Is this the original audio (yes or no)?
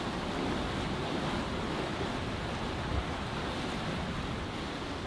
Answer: yes